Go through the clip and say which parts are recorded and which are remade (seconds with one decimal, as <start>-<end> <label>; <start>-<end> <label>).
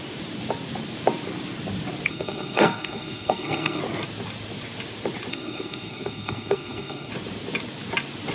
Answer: 0.0-2.1 recorded; 2.1-3.8 remade; 3.8-5.3 recorded; 5.3-7.1 remade; 7.1-8.3 recorded